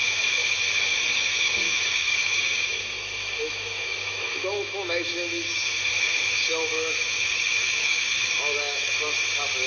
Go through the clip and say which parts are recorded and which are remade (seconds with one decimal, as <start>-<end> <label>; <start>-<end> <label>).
0.0-0.4 remade; 0.4-0.9 recorded; 0.9-8.9 remade; 8.9-9.7 recorded